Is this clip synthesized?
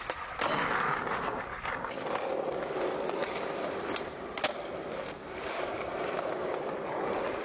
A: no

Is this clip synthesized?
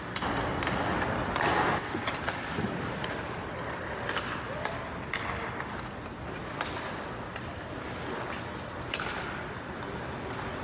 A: no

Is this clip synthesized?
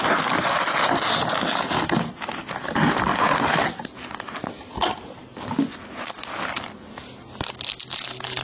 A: no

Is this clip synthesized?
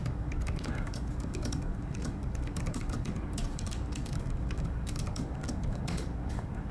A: yes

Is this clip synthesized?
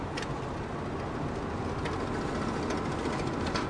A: no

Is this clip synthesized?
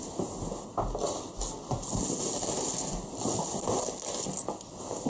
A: no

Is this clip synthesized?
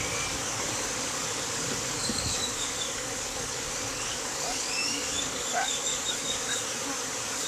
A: yes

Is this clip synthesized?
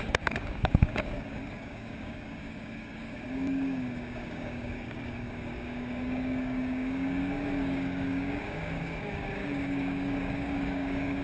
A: yes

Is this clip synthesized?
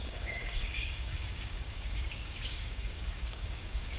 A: yes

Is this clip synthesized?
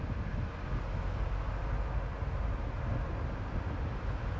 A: no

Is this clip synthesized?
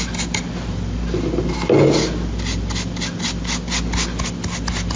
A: no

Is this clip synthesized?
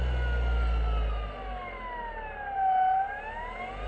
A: no